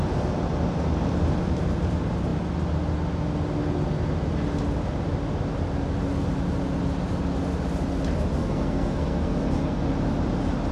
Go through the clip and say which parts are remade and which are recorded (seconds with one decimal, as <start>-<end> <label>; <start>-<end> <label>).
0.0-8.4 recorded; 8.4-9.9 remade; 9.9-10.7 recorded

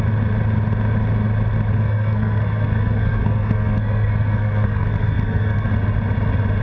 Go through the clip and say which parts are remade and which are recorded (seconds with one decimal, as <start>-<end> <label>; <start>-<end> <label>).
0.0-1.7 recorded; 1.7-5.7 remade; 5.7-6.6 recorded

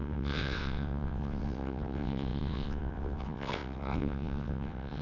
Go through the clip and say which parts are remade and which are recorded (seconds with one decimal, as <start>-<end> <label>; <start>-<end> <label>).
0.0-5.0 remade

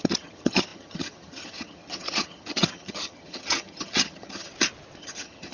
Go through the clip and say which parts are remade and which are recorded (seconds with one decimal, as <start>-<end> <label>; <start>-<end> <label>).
0.0-4.5 remade; 4.5-5.0 recorded; 5.0-5.5 remade